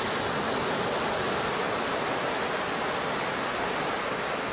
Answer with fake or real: real